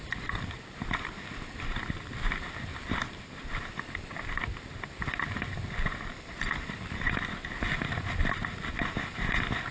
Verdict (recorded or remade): recorded